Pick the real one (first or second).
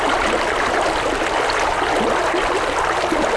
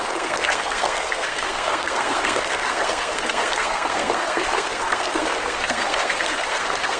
first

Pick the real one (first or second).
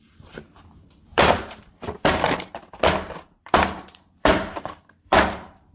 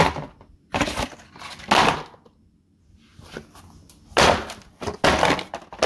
second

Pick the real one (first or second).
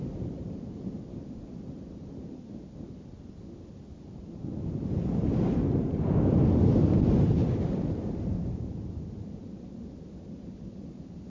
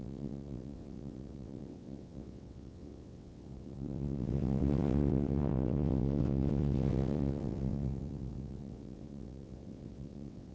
first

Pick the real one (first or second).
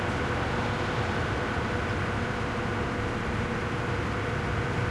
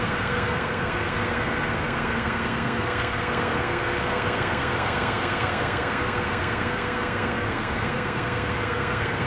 first